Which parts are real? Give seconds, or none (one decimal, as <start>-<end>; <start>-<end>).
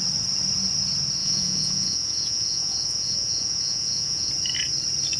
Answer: 0.0-1.2; 4.3-5.2